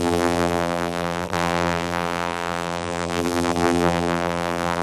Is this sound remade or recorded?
remade